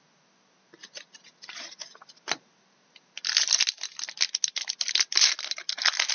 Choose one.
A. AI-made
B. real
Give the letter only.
B